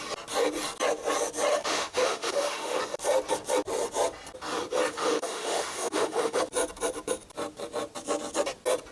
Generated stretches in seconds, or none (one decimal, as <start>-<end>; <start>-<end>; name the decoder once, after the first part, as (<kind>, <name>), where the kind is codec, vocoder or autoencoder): 1.5-2.8 (autoencoder, DAC-VAE); 4.9-6.4